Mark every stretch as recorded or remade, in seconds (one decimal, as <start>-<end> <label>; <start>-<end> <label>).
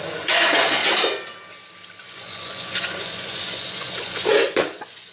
0.0-0.8 remade; 0.8-2.0 recorded; 2.0-5.1 remade